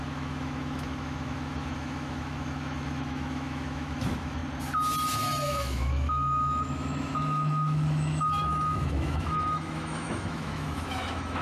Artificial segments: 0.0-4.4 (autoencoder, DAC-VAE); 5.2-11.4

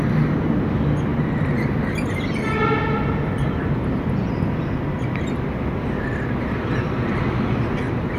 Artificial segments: none

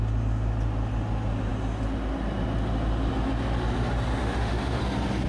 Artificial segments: 4.2-4.8 (autoencoder, DAC-VAE)